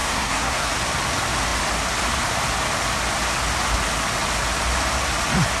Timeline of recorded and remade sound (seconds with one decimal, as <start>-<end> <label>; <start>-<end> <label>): 0.0-0.7 remade; 0.7-5.6 recorded